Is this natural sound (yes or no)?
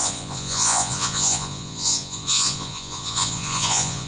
no